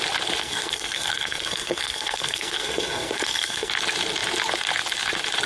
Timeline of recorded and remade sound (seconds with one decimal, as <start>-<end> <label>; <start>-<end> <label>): 0.0-0.4 recorded; 0.4-3.7 remade; 3.7-5.5 recorded